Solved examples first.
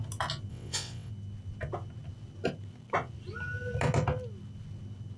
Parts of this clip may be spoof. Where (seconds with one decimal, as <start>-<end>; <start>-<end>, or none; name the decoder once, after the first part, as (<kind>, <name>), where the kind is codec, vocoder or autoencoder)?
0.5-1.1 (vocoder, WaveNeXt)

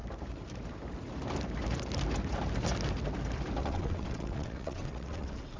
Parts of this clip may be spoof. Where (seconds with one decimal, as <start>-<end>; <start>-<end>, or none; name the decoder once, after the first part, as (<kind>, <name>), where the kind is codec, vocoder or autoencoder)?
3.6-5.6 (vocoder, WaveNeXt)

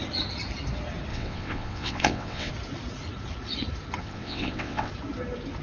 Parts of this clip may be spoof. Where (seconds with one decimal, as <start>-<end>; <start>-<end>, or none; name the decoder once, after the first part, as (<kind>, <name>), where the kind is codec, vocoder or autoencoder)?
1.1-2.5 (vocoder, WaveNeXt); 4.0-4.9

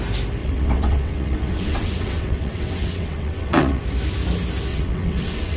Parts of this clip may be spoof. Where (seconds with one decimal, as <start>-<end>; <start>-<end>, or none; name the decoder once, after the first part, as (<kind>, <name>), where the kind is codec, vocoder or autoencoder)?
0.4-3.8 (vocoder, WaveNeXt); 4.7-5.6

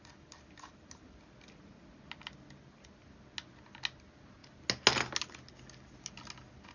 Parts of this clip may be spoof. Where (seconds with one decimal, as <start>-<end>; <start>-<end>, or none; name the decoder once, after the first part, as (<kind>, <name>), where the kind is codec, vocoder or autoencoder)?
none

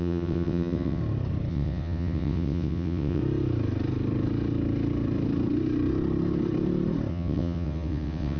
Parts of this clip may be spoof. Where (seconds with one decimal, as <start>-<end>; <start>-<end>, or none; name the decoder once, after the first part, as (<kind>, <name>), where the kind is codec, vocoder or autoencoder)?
0.0-1.0 (vocoder, WaveNeXt); 1.5-3.2; 7.1-8.4